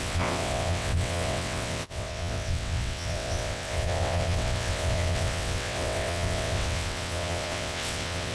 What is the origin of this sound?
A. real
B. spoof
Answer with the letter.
B